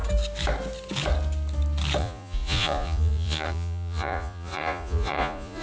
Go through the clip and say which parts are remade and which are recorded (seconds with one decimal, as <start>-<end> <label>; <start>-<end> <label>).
0.0-2.0 recorded; 2.0-5.6 remade